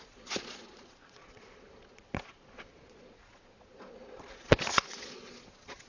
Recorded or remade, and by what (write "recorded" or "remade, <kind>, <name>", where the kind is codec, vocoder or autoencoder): remade, vocoder, Vocos